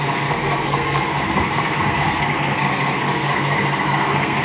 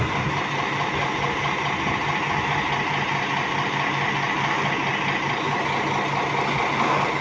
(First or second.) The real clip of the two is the second